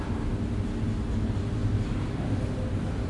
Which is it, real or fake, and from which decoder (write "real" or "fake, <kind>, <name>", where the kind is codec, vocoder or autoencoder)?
real